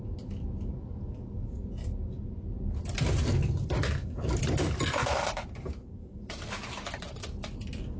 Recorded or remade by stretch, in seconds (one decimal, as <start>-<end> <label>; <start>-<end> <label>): 0.0-5.0 recorded; 5.0-6.5 remade; 6.5-8.0 recorded